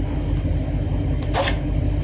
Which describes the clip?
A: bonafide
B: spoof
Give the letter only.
A